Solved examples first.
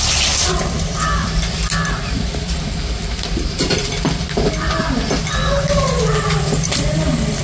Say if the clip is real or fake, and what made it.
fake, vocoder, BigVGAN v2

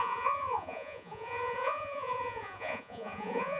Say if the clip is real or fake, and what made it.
fake, vocoder, Vocos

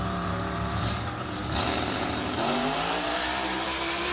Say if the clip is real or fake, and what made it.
fake, vocoder, BigVGAN v2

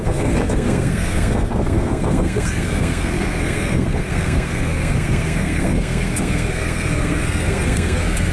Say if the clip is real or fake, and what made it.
fake, codec, SNAC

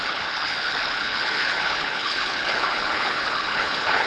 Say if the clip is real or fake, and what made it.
fake, codec, HILCodec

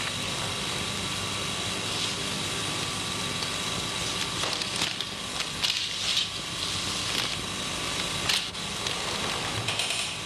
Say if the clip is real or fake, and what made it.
real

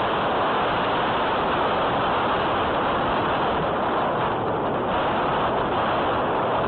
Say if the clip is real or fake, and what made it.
real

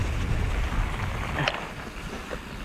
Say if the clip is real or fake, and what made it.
real